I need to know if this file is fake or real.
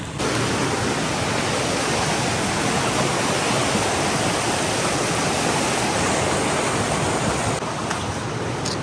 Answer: real